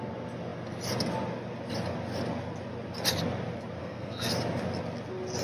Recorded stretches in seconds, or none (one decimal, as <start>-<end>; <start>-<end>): 0.0-3.8; 4.3-5.4